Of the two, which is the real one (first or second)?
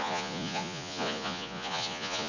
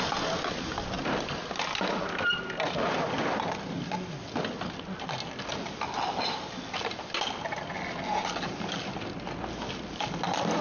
second